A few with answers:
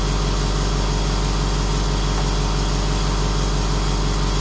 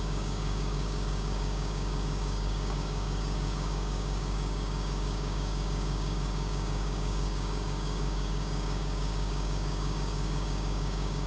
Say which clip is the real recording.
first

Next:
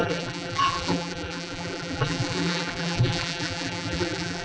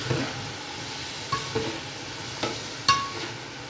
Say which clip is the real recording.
second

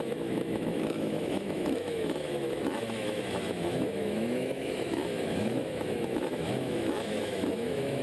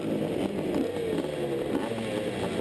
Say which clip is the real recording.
second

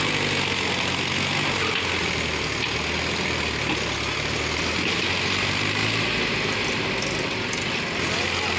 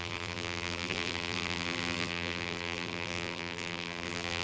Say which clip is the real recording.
first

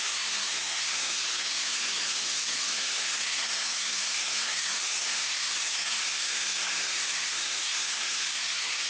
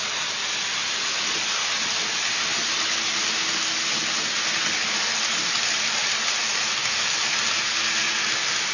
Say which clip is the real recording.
second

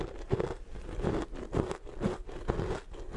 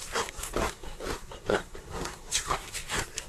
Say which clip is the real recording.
first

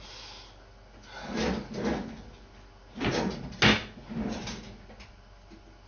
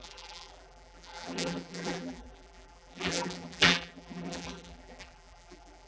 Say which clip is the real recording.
first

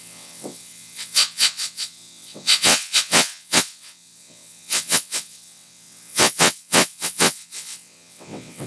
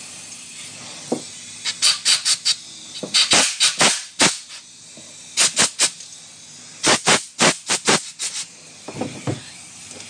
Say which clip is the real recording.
second